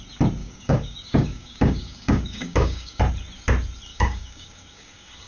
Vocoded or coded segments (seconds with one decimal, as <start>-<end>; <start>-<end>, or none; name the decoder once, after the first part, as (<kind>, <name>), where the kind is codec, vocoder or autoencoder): 0.4-3.0 (codec, DAC); 3.9-5.3